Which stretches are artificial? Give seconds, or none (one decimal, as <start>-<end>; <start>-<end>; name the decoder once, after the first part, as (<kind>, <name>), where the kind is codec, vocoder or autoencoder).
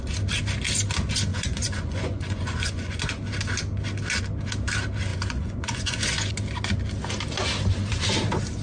1.3-3.0 (vocoder, Vocos); 5.1-6.3